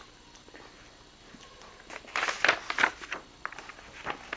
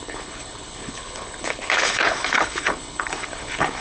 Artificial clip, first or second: second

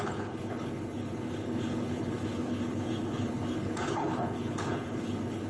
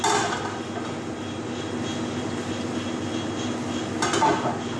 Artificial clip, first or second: first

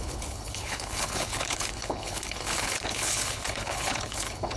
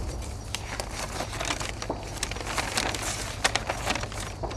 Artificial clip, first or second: first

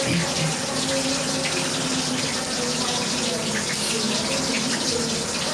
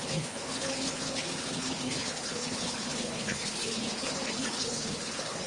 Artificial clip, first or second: second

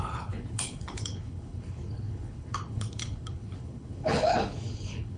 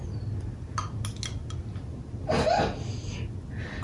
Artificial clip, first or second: first